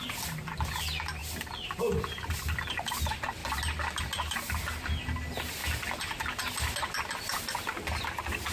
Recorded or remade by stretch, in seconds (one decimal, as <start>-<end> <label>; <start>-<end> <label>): 0.0-1.2 recorded; 1.2-2.3 remade; 2.3-3.4 recorded; 3.4-4.0 remade; 4.0-8.5 recorded